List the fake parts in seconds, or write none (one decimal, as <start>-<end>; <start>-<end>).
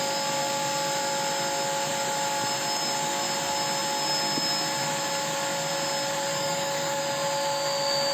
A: 6.3-7.0